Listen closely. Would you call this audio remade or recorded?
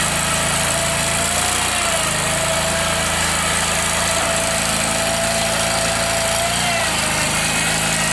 recorded